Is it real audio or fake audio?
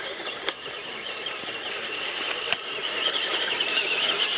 fake